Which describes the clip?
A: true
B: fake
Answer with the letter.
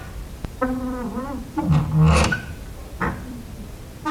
B